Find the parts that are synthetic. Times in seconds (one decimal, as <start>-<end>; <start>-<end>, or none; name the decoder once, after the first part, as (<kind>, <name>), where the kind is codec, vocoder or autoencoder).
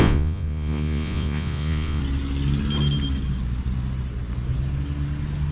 0.0-2.0 (vocoder, Vocos)